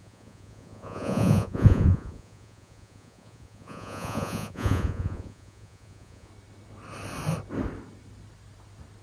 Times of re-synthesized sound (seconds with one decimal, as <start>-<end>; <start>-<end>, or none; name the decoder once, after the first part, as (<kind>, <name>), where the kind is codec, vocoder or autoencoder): 0.0-6.3 (vocoder, Vocos)